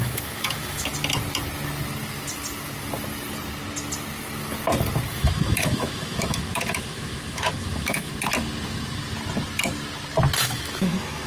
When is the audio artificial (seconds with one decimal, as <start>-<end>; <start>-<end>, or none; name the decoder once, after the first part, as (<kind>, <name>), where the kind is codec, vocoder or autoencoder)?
0.0-0.9 (autoencoder, DAC-VAE); 5.1-8.1; 10.4-11.3